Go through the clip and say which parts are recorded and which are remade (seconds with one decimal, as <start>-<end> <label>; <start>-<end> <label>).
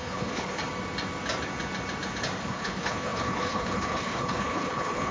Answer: 0.0-0.6 remade; 0.6-2.4 recorded; 2.4-5.1 remade